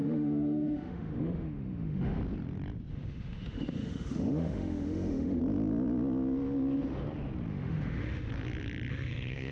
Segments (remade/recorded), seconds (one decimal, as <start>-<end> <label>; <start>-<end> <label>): 0.0-2.2 remade; 2.2-2.9 recorded; 2.9-5.4 remade; 5.4-7.5 recorded; 7.5-8.3 remade; 8.3-8.9 recorded; 8.9-9.5 remade